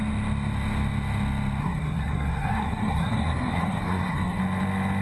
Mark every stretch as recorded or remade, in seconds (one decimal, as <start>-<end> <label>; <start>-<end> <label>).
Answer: 0.0-1.6 recorded; 1.6-4.4 remade; 4.4-5.0 recorded